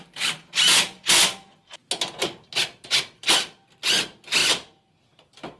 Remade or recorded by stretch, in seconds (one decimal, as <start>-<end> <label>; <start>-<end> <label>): 0.0-4.4 recorded; 4.4-5.6 remade